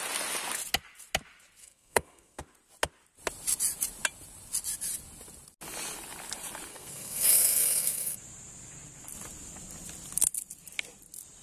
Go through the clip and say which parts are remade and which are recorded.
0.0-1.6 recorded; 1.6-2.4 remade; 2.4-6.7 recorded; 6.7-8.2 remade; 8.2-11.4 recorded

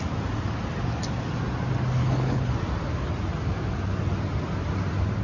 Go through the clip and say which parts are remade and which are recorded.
0.0-2.0 recorded; 2.0-2.5 remade; 2.5-5.2 recorded

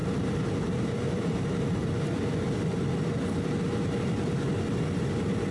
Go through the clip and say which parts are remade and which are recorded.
0.0-2.9 remade; 2.9-5.5 recorded

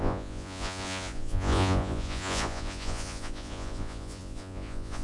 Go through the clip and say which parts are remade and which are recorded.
0.0-5.0 remade

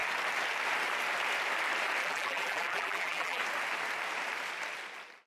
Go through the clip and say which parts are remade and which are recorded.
0.0-2.0 recorded; 2.0-3.4 remade; 3.4-5.3 recorded